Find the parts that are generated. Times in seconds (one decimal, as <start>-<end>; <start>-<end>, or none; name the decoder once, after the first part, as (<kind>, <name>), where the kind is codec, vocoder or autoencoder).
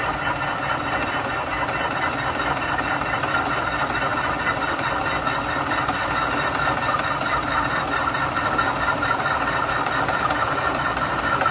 none